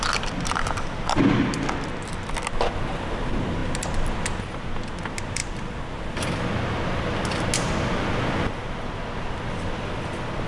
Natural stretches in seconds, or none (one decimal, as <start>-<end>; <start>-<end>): 0.0-10.5